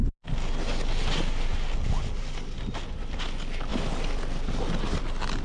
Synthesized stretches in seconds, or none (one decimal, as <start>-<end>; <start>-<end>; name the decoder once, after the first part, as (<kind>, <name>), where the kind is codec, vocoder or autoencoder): none